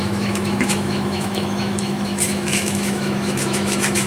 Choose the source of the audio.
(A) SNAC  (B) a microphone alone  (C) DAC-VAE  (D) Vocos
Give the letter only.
C